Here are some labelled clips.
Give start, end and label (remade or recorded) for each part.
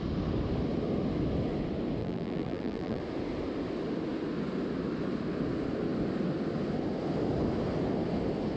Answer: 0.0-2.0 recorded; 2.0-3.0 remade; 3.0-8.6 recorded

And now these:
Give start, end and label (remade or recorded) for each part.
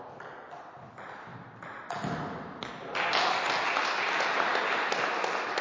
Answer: 0.0-5.6 recorded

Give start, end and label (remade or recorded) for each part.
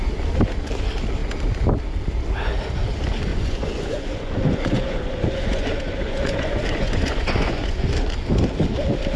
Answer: 0.0-3.3 recorded; 3.3-7.9 remade; 7.9-9.2 recorded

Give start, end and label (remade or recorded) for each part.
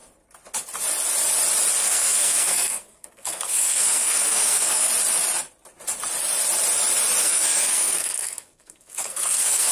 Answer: 0.0-1.8 recorded; 1.8-4.9 remade; 4.9-7.2 recorded; 7.2-9.7 remade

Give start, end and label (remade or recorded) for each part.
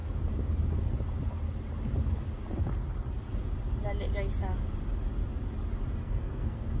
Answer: 0.0-6.0 recorded; 6.0-6.8 remade